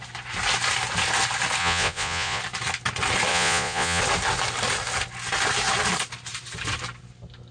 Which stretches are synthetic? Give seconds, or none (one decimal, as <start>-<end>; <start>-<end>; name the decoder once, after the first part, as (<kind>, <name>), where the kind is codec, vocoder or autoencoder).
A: 1.6-2.4 (vocoder, Vocos); 3.3-4.0